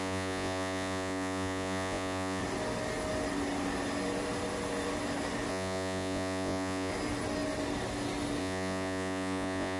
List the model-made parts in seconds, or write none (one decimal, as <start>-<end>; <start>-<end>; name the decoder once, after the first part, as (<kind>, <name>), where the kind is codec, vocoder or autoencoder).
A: 0.0-2.4 (vocoder, Vocos); 5.5-6.9; 8.4-9.8

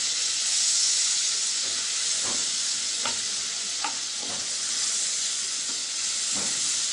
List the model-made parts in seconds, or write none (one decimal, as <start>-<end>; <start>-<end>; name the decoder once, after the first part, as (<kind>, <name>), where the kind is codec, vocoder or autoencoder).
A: 0.0-6.9 (vocoder, Vocos)

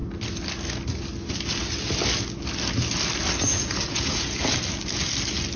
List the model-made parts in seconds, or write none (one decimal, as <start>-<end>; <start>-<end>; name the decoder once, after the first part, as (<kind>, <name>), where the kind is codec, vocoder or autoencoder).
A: 3.5-4.5 (vocoder, Vocos)

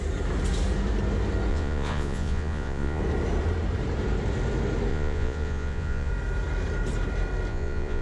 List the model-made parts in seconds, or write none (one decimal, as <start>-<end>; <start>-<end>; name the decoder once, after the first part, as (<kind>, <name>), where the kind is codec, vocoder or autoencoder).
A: 1.5-3.0 (vocoder, Vocos); 4.9-6.1; 7.5-8.0

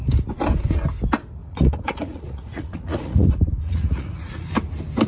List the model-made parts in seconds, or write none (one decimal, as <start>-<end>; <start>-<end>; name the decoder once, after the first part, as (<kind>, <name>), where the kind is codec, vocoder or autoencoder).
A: 1.4-4.5 (vocoder, Vocos)

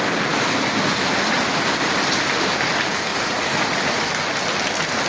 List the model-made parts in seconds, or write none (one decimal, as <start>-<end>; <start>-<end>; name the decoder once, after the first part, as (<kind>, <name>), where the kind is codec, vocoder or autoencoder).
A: 3.1-4.0 (vocoder, Vocos)